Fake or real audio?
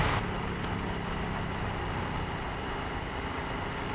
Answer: real